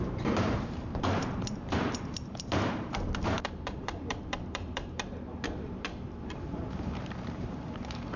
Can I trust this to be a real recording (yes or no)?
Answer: no